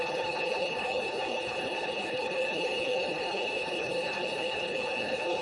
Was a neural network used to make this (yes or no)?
yes